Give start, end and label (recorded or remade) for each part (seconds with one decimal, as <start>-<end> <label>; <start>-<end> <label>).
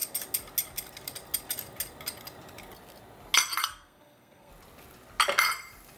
0.0-3.6 recorded; 3.6-4.5 remade; 4.5-6.0 recorded